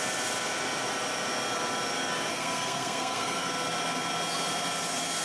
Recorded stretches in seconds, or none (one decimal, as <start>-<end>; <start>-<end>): 0.0-2.3; 3.5-5.2